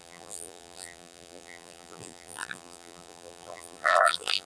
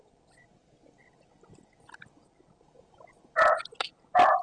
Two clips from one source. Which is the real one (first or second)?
second